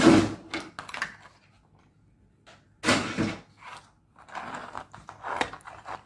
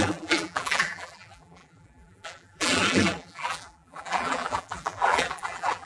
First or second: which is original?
first